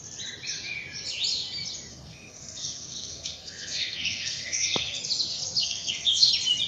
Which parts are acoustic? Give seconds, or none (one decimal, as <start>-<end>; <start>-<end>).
0.0-1.9; 5.0-5.6; 6.3-6.7